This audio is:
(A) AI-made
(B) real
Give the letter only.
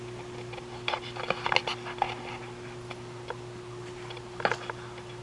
B